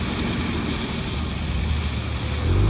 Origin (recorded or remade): recorded